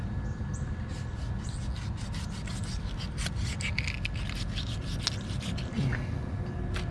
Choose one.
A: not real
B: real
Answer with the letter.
B